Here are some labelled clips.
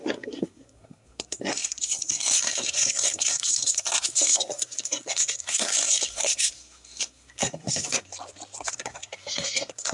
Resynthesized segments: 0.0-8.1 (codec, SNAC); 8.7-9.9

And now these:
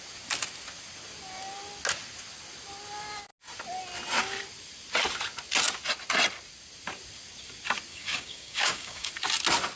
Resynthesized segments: 7.9-9.1 (codec, DAC)

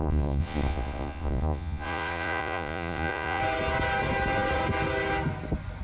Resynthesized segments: 0.0-3.4 (vocoder, Vocos)

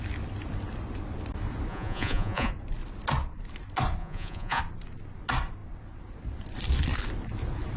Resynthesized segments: 1.7-2.5 (vocoder, Vocos); 4.0-4.6

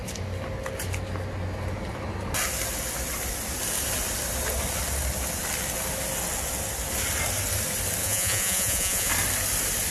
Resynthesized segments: 8.0-9.1 (vocoder, Vocos)

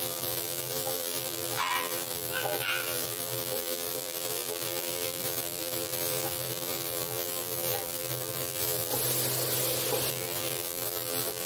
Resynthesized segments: 0.0-8.9 (vocoder, BigVGAN v2); 10.1-11.5

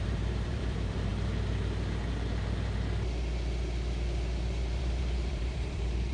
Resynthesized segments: 0.0-1.1 (vocoder, BigVGAN v2); 4.8-6.1

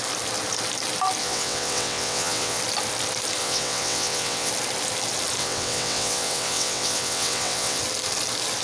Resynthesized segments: 1.2-2.6 (vocoder, WaveNeXt); 3.4-4.5; 5.4-7.8